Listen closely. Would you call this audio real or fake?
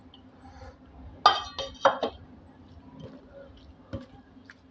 real